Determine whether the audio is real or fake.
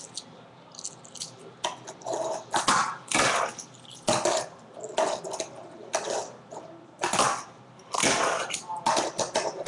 real